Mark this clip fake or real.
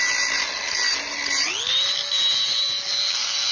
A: real